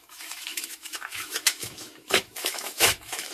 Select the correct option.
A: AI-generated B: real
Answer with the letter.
A